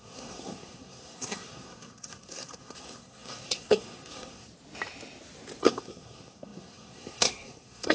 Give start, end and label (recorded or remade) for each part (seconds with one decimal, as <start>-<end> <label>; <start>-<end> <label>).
0.0-4.5 remade; 4.5-5.6 recorded; 5.6-7.9 remade